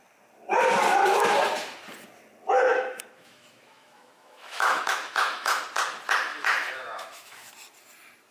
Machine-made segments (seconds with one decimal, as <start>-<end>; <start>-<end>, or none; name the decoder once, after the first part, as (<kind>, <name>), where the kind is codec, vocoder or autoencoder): 2.7-5.6 (autoencoder, DAC-VAE); 6.3-7.5